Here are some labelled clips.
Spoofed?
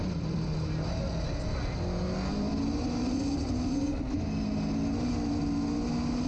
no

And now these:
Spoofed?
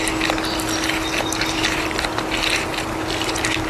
no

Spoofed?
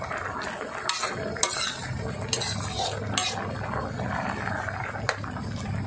no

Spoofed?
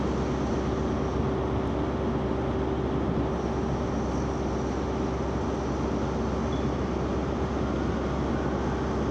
no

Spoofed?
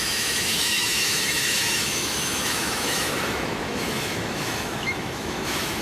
yes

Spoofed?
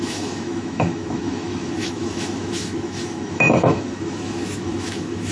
yes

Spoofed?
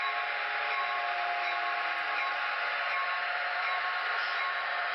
no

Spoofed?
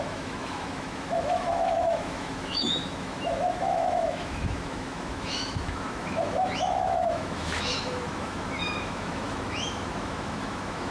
yes